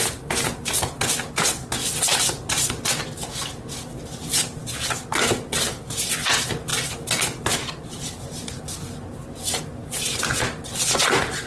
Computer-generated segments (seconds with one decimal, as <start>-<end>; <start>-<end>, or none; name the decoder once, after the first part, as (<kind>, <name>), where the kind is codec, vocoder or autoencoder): none

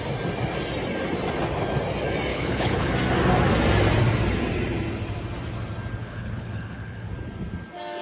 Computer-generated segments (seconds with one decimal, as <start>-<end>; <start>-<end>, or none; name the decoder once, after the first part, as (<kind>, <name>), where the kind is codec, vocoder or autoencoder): 2.3-2.9 (codec, HILCodec); 6.0-7.1

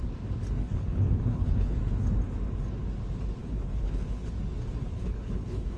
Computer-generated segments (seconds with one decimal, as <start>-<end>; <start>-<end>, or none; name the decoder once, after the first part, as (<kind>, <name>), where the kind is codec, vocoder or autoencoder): 0.6-1.8 (codec, HILCodec); 3.4-4.3; 4.8-5.8

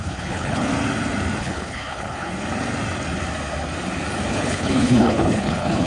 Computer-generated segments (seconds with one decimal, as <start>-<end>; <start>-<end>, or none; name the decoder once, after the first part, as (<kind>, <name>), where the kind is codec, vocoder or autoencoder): 0.0-0.7 (codec, HILCodec); 1.4-2.3; 4.3-5.9

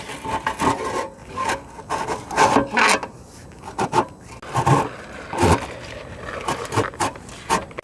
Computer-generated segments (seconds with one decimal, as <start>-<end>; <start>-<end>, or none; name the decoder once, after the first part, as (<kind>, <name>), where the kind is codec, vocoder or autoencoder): none

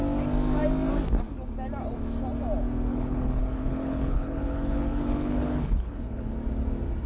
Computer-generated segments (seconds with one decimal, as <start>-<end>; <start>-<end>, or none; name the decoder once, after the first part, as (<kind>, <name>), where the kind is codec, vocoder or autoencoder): 2.9-6.3 (codec, HILCodec)

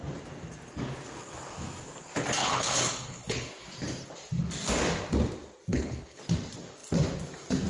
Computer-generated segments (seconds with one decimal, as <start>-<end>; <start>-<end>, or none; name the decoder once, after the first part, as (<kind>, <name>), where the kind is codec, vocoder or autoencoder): 2.4-3.5 (codec, HILCodec); 5.7-6.2

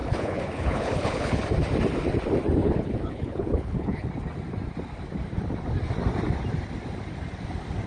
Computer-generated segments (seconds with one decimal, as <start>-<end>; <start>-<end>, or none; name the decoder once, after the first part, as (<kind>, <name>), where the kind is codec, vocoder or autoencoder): 0.0-1.4 (codec, HILCodec); 2.6-4.1